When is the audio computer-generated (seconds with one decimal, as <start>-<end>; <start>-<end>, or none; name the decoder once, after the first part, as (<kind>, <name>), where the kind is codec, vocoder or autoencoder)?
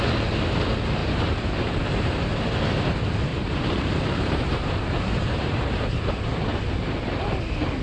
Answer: 1.0-2.3 (vocoder, BigVGAN v2); 3.3-6.6